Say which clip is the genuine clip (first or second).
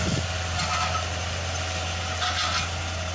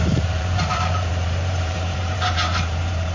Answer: first